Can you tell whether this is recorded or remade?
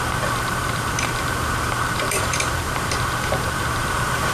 remade